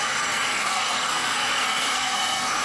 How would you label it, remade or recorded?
remade